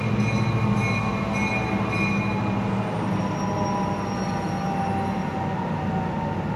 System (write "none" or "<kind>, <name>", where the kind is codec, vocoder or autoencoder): none